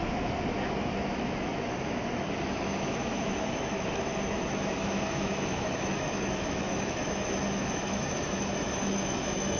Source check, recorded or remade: remade